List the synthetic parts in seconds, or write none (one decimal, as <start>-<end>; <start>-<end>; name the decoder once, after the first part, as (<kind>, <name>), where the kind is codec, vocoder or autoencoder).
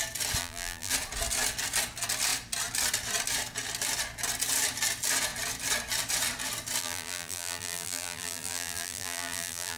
0.4-0.9 (vocoder, BigVGAN v2); 6.8-9.8